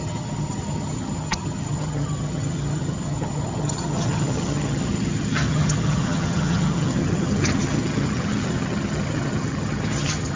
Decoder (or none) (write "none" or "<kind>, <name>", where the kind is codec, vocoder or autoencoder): vocoder, HiFi-GAN